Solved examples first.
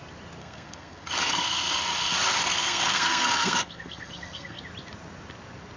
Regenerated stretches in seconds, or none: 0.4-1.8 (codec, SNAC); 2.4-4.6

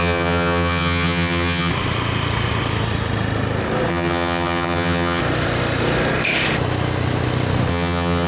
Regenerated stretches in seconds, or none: 0.0-1.7 (vocoder, HiFi-GAN); 3.9-5.2; 7.7-8.3

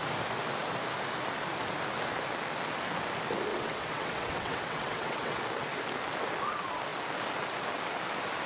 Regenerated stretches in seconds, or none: 3.5-5.4 (vocoder, WaveNeXt)

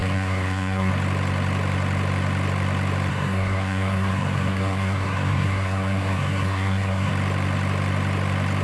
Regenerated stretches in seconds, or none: 0.0-0.9 (codec, SNAC); 3.1-7.1

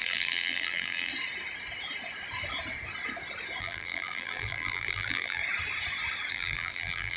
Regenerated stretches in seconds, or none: 0.0-1.1 (vocoder, BigVGAN v2); 3.6-5.4; 6.3-7.2